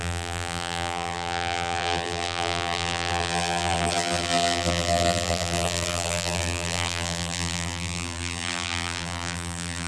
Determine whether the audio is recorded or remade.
remade